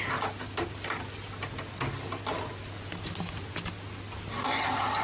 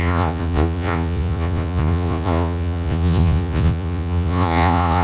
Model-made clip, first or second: second